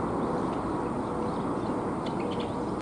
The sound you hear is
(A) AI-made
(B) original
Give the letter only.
B